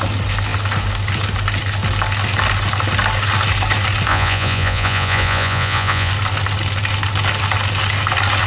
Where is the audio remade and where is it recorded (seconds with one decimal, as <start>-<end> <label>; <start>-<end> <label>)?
0.0-4.1 recorded; 4.1-6.1 remade; 6.1-8.5 recorded

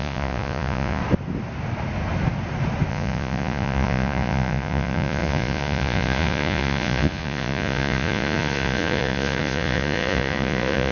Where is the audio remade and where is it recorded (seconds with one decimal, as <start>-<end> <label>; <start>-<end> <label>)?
0.0-1.0 remade; 1.0-2.9 recorded; 2.9-10.9 remade

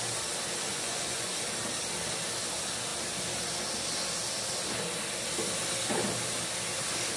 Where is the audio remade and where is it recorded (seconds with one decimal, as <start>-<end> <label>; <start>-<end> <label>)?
0.0-0.7 recorded; 0.7-1.3 remade; 1.3-7.2 recorded

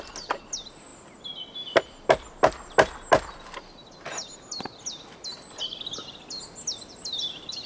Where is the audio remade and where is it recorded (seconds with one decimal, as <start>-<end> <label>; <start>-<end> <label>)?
0.0-7.7 recorded

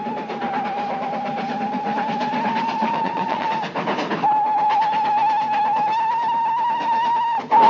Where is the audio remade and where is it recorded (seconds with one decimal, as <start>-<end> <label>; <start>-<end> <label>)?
0.0-2.8 recorded; 2.8-3.5 remade; 3.5-7.7 recorded

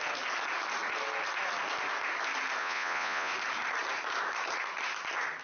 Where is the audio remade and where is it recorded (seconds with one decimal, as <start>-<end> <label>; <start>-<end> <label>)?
0.0-2.6 recorded; 2.6-3.3 remade; 3.3-5.4 recorded